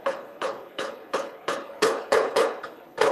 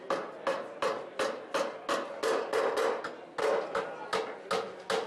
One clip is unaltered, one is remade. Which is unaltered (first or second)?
second